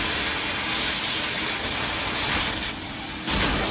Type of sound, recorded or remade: recorded